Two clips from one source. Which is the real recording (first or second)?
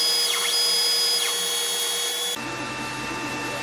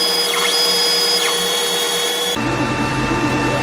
first